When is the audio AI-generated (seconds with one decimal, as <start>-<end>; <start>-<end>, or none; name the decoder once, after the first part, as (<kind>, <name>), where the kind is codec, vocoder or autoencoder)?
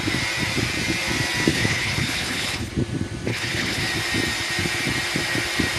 1.5-2.7 (codec, HILCodec); 3.3-3.8